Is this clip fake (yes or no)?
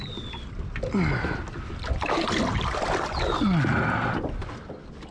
no